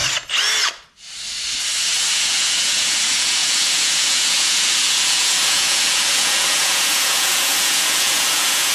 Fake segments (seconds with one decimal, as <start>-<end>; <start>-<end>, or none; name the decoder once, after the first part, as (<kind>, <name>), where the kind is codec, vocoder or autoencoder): 2.1-8.7 (vocoder, Vocos)